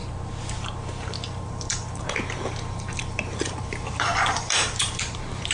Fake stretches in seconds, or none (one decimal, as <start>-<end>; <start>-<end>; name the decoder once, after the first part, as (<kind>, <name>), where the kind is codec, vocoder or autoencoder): 1.0-5.5 (vocoder, BigVGAN v2)